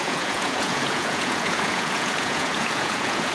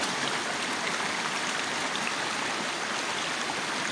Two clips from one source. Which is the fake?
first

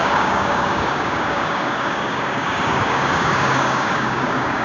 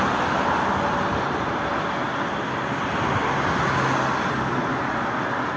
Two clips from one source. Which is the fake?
first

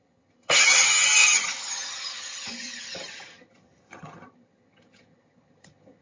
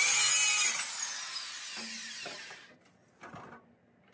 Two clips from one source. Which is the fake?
first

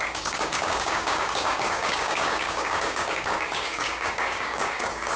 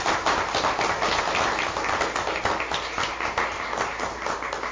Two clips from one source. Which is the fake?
first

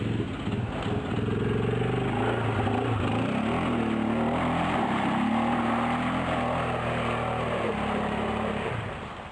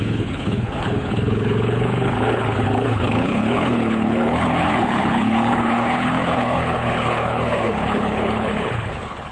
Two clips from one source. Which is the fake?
second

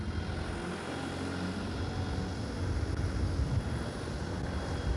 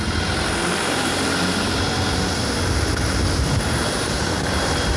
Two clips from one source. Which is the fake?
second